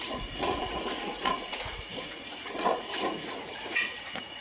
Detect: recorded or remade remade